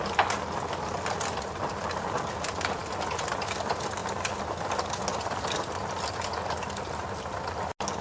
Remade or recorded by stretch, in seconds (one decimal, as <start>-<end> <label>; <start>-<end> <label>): 0.0-8.0 recorded